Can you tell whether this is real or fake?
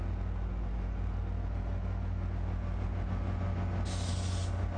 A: real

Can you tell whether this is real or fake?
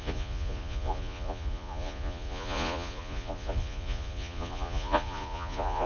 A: fake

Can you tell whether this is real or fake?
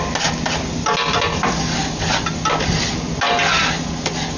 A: real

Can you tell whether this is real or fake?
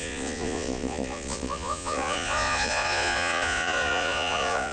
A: fake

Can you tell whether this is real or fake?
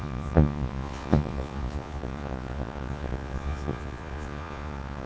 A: fake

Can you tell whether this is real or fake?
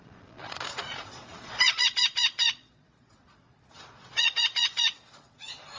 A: fake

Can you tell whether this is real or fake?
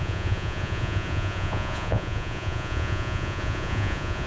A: fake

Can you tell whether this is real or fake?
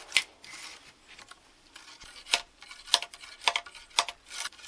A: real